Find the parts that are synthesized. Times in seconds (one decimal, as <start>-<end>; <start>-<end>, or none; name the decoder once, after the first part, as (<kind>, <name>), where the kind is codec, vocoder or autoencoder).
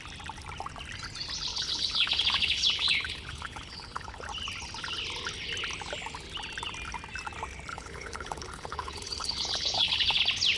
1.5-4.2 (codec, HILCodec); 7.7-10.2